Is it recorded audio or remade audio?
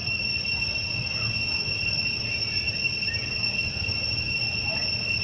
recorded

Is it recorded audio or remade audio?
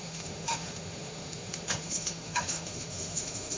remade